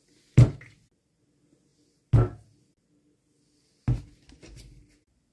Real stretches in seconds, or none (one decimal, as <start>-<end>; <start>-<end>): 0.0-5.3